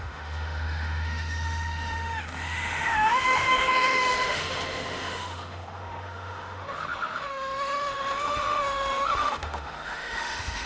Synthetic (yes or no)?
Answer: yes